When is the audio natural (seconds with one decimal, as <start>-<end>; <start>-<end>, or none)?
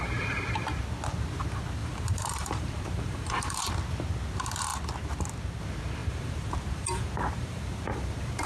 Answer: 0.0-1.8; 3.6-6.0